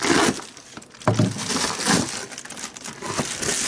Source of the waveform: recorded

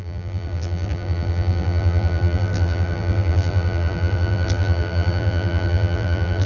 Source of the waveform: remade